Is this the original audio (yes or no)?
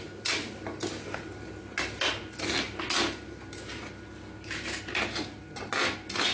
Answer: yes